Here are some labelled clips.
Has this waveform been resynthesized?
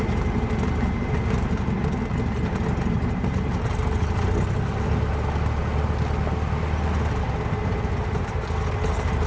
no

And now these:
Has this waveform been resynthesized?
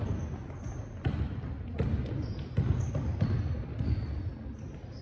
no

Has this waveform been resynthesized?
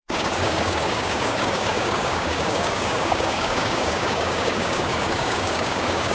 yes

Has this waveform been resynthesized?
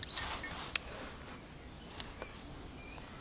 no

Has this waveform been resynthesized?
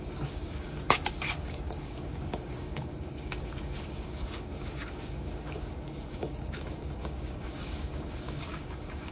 yes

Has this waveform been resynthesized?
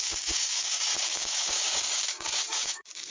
yes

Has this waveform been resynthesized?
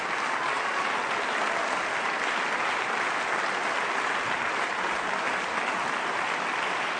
no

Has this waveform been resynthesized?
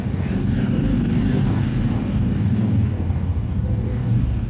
yes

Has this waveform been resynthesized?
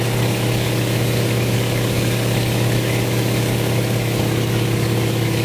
yes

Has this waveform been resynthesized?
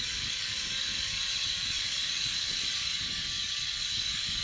yes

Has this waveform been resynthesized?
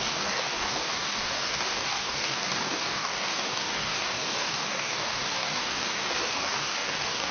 yes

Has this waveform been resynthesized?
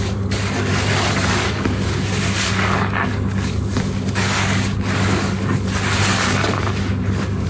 yes